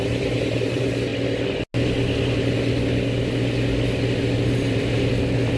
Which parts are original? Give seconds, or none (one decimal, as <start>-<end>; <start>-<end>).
1.1-4.4; 5.1-5.6